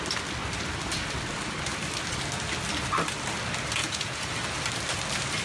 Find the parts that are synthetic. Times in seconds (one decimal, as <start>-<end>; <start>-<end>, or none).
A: 3.8-4.3

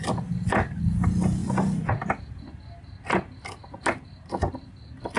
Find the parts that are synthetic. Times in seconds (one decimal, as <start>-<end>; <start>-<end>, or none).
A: none

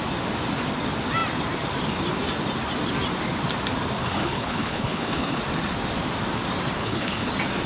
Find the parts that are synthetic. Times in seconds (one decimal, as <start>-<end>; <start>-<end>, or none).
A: 4.0-5.4; 6.8-7.3

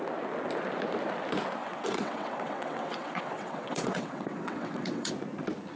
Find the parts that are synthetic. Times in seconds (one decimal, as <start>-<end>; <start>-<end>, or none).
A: 1.6-5.1

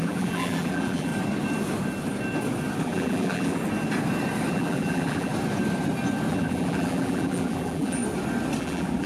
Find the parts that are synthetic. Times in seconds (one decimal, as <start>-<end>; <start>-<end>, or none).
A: 0.0-1.1; 2.8-3.6; 4.5-5.3; 6.3-8.0; 8.6-9.1

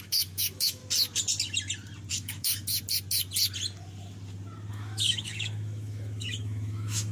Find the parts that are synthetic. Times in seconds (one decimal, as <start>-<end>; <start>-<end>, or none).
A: 0.0-0.8; 2.1-2.6; 4.7-7.1

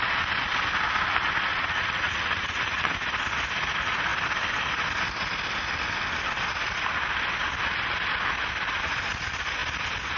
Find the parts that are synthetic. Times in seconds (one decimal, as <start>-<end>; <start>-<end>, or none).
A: 1.5-2.9

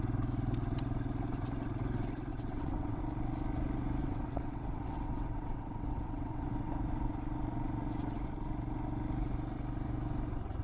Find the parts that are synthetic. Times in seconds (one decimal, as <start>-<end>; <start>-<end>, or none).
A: 2.3-3.0; 4.0-6.7